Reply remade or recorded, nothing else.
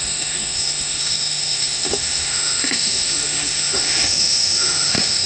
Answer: remade